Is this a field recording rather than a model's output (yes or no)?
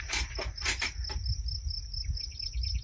yes